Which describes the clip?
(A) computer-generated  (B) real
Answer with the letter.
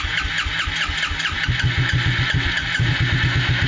B